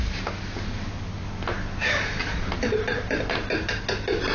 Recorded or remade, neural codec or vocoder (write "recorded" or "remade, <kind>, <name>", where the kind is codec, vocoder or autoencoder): recorded